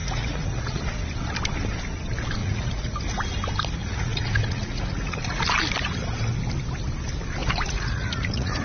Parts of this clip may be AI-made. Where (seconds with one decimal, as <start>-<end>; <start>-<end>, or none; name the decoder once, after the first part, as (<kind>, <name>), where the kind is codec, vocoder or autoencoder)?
0.0-0.8 (vocoder, Vocos); 2.4-3.0; 3.8-5.4; 7.4-8.6